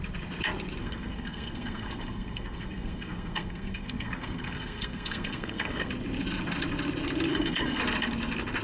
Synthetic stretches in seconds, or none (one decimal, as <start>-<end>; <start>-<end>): 0.8-5.9; 7.3-7.8